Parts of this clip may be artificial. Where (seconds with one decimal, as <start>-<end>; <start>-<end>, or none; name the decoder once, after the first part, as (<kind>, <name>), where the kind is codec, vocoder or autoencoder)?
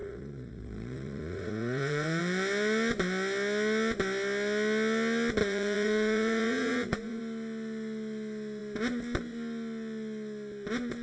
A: 0.0-2.2 (vocoder, Vocos); 5.4-7.2